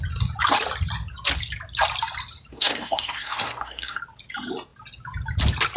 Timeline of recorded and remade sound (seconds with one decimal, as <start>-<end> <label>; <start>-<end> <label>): 0.0-2.5 recorded; 2.5-4.0 remade; 4.0-5.8 recorded